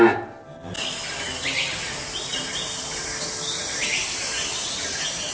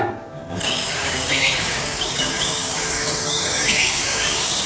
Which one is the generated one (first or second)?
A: second